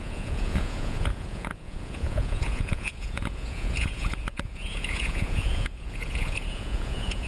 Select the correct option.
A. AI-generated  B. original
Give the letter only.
A